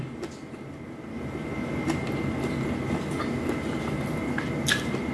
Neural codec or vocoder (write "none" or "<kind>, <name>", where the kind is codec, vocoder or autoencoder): none